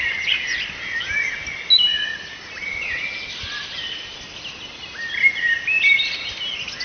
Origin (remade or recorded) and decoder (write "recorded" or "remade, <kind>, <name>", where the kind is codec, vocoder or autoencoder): recorded